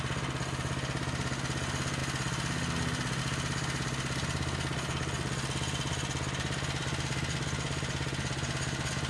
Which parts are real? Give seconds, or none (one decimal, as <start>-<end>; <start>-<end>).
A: 0.0-9.1

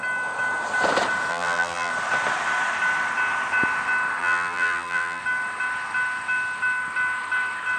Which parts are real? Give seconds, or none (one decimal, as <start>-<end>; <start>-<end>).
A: 0.0-1.3; 1.9-4.2; 5.2-7.8

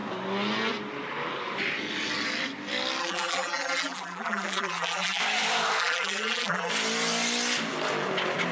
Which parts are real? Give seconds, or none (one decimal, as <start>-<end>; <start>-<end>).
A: 0.0-3.0; 5.2-5.8; 6.7-8.5

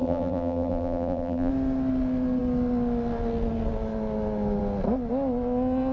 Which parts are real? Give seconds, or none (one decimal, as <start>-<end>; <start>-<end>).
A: 1.5-5.9

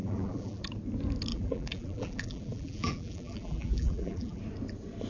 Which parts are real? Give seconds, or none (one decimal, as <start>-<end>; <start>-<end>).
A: 0.6-1.3; 4.4-5.1

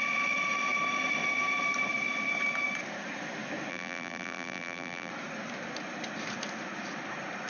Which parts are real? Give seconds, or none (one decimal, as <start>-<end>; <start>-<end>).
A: 0.0-3.7; 5.1-7.5

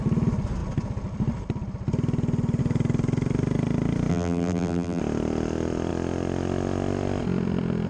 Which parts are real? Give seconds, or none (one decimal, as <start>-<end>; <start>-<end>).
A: 0.0-4.1; 5.0-7.9